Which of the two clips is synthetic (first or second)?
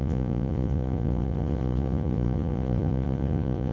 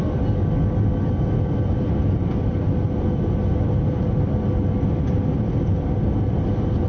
first